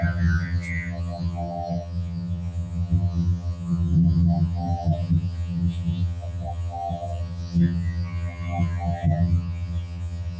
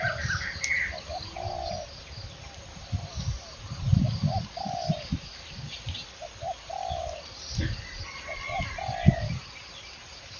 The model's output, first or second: first